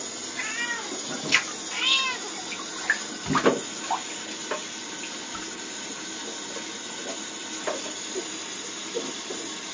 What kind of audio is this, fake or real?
real